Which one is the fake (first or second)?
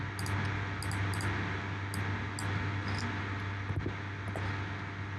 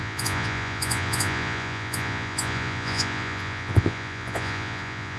second